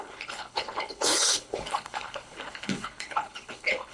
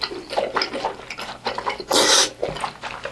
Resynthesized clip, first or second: first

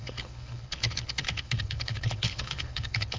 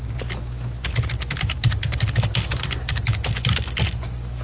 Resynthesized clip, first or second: first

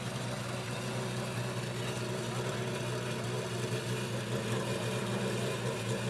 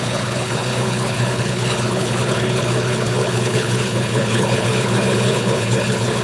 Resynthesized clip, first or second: second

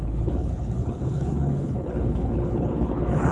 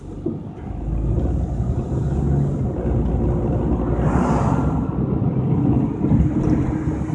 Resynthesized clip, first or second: first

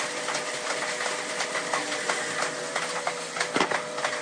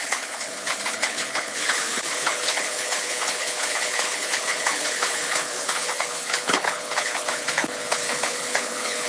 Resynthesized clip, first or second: second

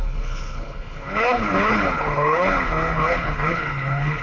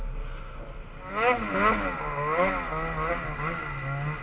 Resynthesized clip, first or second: first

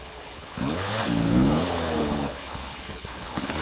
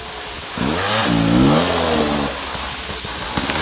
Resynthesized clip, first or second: first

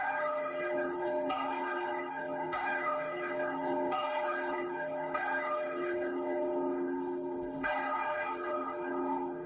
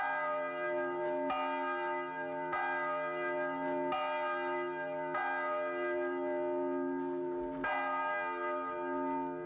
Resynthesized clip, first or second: first